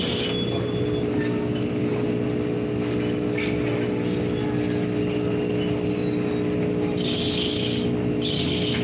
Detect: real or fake real